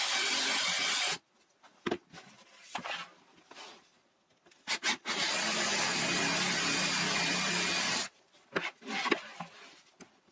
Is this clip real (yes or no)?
yes